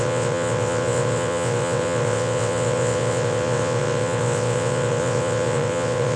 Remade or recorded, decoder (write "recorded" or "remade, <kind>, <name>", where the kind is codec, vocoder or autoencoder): remade, vocoder, WaveNeXt